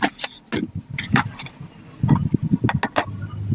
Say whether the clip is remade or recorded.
recorded